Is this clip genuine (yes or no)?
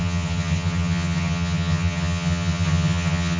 no